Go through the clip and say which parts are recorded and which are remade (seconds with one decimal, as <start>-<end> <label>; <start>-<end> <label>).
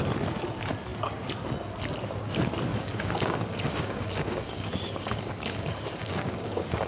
0.0-2.7 recorded; 2.7-6.9 remade